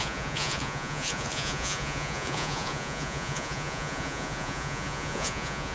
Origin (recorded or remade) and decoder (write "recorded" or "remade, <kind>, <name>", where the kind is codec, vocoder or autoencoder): remade, vocoder, Vocos